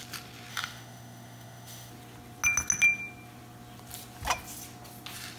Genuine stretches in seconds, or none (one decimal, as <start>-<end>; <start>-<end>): 0.0-0.5; 1.9-5.4